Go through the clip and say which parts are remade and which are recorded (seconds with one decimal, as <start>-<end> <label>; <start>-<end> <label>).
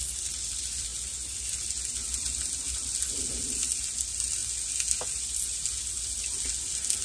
0.0-7.0 recorded